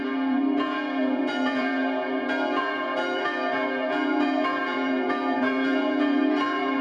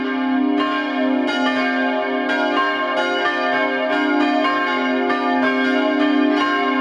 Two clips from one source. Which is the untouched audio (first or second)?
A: second